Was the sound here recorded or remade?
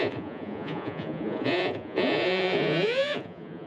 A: remade